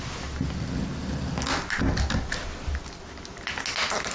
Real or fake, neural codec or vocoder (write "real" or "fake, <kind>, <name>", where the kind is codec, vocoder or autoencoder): real